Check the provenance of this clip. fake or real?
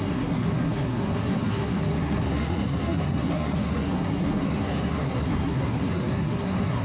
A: fake